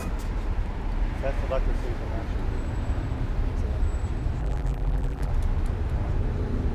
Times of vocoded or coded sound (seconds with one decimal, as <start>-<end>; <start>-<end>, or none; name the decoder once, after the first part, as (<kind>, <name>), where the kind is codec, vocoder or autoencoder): 4.4-5.3 (vocoder, BigVGAN v2)